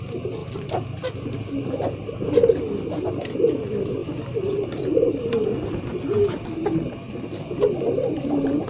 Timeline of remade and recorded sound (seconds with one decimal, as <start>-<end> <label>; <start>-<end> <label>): 0.0-0.4 recorded; 0.4-1.4 remade; 1.4-4.0 recorded; 4.0-5.1 remade; 5.1-8.7 recorded